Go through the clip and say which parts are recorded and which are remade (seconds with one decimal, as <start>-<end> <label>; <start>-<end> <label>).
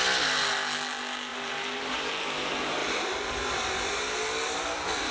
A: 0.0-1.3 recorded; 1.3-2.1 remade; 2.1-2.8 recorded; 2.8-3.4 remade; 3.4-5.1 recorded